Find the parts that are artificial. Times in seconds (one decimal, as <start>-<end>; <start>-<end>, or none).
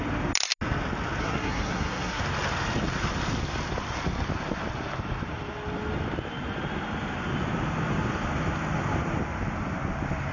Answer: 1.2-2.2